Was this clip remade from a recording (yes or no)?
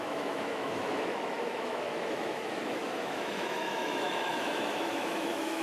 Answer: yes